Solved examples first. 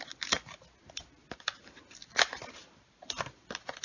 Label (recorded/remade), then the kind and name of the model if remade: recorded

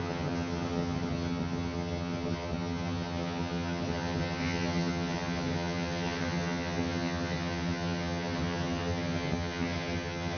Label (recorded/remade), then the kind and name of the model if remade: remade, vocoder, HiFi-GAN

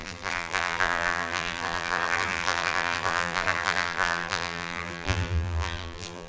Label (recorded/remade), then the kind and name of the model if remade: remade, vocoder, BigVGAN v2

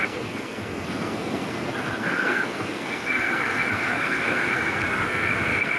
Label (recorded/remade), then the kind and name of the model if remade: remade, codec, SNAC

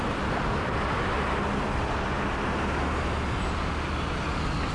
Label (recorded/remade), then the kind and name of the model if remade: recorded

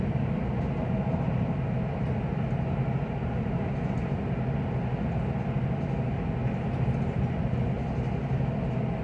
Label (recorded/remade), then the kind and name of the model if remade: recorded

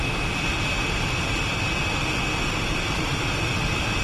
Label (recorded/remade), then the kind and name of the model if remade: recorded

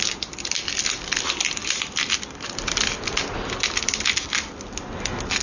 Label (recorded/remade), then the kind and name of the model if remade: recorded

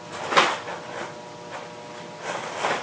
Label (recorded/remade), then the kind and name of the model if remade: recorded